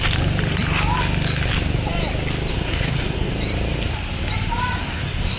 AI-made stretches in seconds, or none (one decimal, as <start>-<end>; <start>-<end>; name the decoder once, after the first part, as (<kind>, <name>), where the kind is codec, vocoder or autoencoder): 2.5-3.3 (codec, SNAC); 4.8-5.4